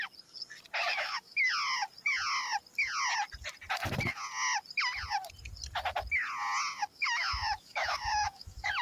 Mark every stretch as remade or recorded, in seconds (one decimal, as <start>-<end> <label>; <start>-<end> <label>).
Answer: 0.0-0.8 recorded; 0.8-1.5 remade; 1.5-6.9 recorded; 6.9-8.8 remade